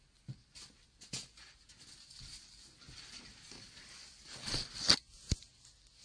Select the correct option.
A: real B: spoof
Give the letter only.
A